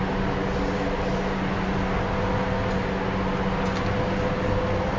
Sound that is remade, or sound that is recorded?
recorded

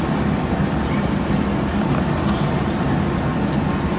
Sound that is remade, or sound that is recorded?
recorded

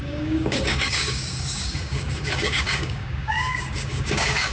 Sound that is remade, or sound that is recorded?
remade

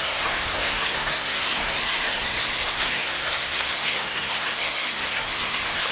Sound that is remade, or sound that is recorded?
remade